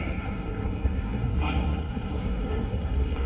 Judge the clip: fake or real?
fake